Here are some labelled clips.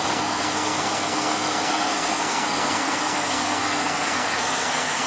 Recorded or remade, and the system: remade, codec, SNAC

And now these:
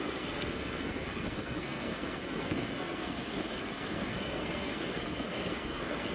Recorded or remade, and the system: remade, codec, SNAC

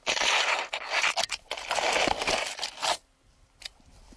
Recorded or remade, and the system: recorded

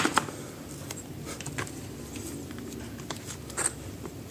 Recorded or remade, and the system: recorded